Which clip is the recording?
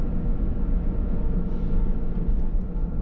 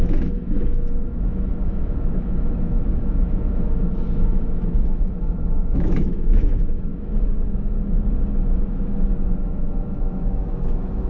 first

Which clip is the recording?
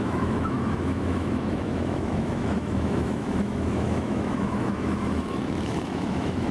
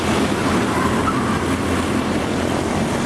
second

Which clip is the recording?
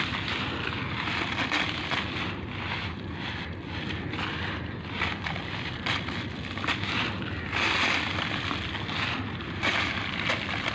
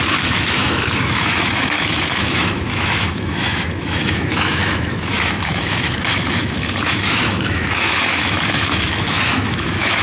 first